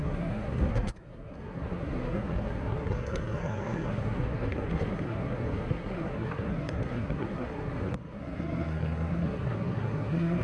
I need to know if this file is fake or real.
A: fake